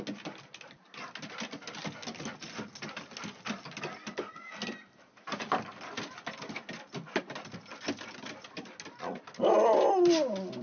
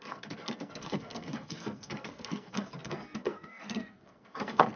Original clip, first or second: first